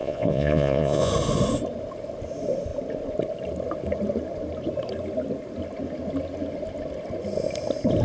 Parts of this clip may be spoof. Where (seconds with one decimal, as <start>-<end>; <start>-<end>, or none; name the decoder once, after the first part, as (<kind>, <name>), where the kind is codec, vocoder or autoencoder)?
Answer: 0.0-1.1 (vocoder, Vocos)